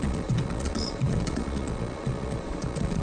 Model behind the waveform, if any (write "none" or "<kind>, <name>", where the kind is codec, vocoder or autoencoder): vocoder, Vocos